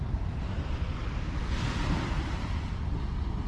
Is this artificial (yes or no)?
no